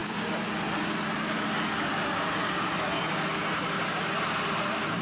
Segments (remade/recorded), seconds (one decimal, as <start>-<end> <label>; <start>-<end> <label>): 0.0-5.0 recorded